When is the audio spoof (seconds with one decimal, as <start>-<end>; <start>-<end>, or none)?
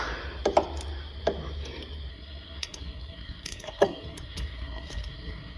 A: 2.1-5.6